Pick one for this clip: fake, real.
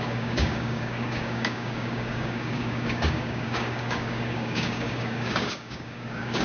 fake